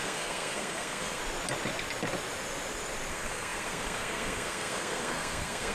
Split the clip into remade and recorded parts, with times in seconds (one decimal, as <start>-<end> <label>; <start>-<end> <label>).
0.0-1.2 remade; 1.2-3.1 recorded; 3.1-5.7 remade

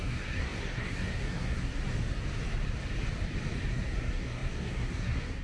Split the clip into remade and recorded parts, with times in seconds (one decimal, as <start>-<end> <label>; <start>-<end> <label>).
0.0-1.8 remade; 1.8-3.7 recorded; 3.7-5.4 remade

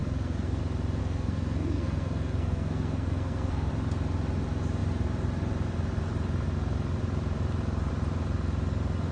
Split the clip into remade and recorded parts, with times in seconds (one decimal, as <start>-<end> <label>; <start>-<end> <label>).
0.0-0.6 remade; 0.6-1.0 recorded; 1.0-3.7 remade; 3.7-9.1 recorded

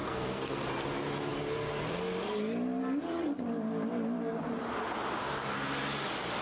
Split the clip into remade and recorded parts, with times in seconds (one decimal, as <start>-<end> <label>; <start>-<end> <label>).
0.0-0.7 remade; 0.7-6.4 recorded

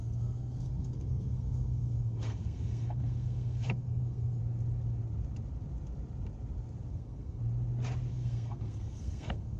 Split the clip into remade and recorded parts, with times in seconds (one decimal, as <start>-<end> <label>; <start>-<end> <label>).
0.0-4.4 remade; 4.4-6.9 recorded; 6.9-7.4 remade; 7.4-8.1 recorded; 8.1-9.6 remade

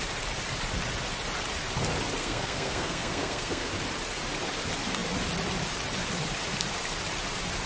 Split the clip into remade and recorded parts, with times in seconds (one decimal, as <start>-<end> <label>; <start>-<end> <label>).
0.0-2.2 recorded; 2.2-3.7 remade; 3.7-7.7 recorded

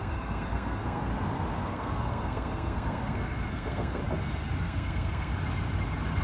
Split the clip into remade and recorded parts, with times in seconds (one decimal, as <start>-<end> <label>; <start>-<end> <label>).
0.0-1.1 remade; 1.1-1.7 recorded; 1.7-4.0 remade; 4.0-4.6 recorded; 4.6-5.3 remade; 5.3-6.2 recorded